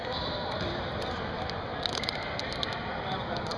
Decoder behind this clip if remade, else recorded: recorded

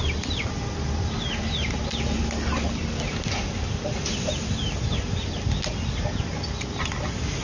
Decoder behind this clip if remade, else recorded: recorded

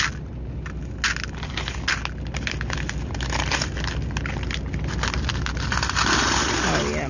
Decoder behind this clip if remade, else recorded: recorded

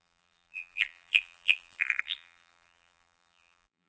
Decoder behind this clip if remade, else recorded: remade, vocoder, BigVGAN v2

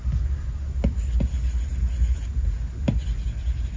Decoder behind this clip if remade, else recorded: recorded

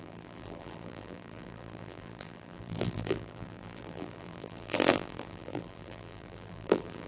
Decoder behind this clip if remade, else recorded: remade, vocoder, BigVGAN v2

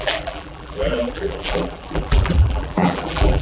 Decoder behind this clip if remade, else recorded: remade, vocoder, BigVGAN v2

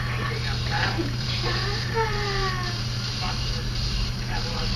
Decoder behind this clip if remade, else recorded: remade, vocoder, BigVGAN v2